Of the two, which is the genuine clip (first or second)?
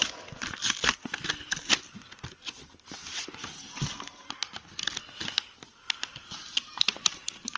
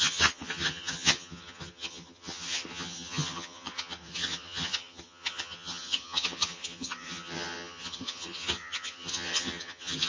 first